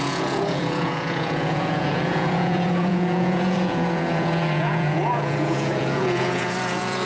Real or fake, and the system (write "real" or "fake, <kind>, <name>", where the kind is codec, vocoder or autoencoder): fake, vocoder, Vocos